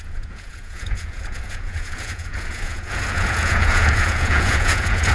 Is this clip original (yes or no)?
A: no